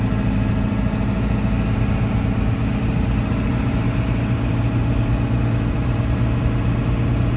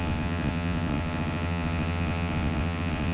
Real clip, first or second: first